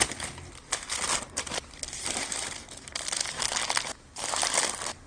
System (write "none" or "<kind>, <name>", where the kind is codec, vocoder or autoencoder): none